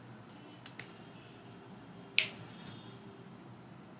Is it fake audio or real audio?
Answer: real